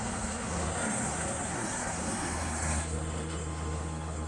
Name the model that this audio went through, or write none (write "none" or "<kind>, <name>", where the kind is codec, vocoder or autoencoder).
codec, SNAC